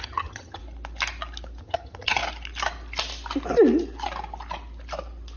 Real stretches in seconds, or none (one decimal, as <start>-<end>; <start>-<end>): 0.6-1.6; 2.2-5.4